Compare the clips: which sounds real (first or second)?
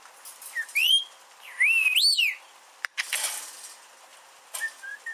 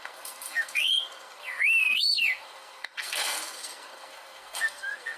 first